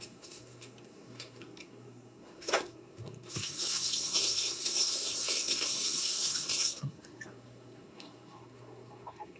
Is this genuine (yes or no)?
no